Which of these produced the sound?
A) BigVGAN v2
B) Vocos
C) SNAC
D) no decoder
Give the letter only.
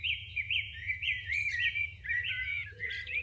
B